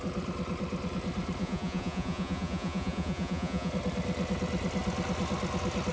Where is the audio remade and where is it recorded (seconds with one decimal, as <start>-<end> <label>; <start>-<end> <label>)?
0.0-1.4 recorded; 1.4-3.7 remade; 3.7-5.9 recorded